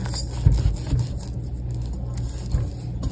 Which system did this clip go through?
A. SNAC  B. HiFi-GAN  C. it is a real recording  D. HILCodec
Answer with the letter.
C